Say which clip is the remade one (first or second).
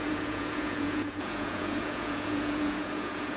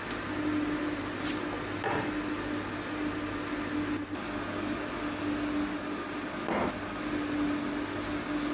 first